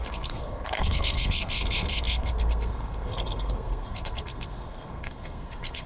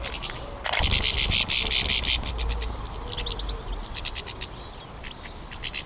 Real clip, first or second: second